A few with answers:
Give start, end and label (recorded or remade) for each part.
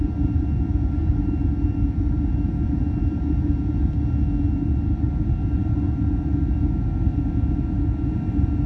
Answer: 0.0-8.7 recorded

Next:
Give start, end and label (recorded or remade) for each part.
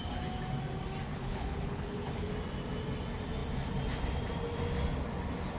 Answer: 0.0-1.1 recorded; 1.1-2.3 remade; 2.3-5.6 recorded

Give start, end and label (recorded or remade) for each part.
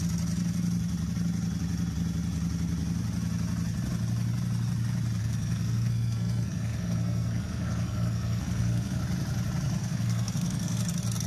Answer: 0.0-5.2 recorded; 5.2-9.0 remade; 9.0-9.8 recorded; 9.8-10.8 remade; 10.8-11.3 recorded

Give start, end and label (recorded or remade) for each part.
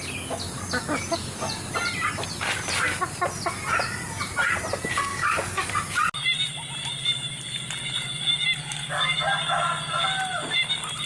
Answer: 0.0-5.1 recorded; 5.1-5.7 remade; 5.7-8.6 recorded; 8.6-9.3 remade; 9.3-11.1 recorded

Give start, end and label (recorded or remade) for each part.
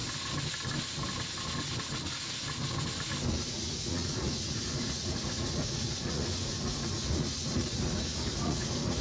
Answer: 0.0-3.3 recorded; 3.3-9.0 remade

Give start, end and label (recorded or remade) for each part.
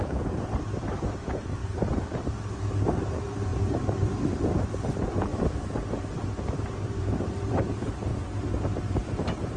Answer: 0.0-5.3 remade; 5.3-6.6 recorded; 6.6-8.1 remade; 8.1-8.8 recorded; 8.8-9.6 remade